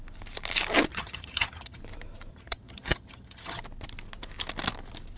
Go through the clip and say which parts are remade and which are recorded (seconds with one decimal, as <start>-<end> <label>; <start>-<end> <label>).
0.0-0.9 recorded; 0.9-1.8 remade; 1.8-2.3 recorded; 2.3-3.6 remade; 3.6-5.2 recorded